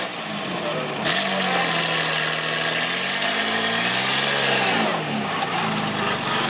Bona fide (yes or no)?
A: yes